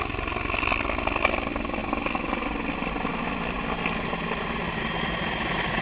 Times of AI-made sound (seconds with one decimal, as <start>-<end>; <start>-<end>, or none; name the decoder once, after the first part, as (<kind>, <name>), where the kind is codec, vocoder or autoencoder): none

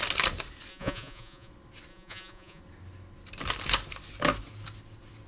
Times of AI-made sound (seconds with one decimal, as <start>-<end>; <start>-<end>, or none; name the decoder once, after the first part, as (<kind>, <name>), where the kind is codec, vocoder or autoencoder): 0.7-1.5 (vocoder, Vocos); 1.9-2.6

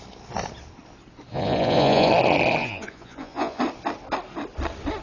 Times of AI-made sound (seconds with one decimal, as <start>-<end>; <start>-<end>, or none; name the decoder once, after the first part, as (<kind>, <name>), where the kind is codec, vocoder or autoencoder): 1.3-2.1 (vocoder, Vocos); 2.6-3.6